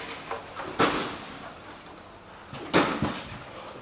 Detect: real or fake real